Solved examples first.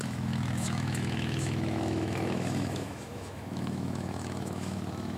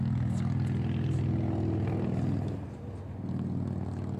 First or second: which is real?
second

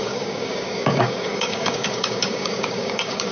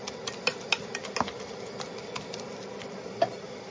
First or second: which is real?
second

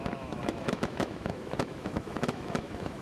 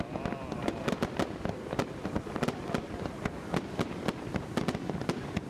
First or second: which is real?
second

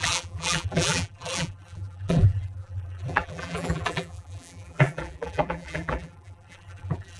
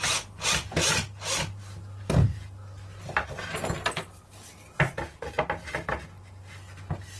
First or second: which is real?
second